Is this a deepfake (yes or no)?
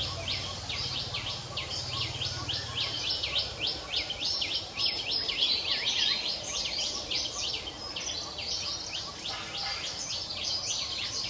no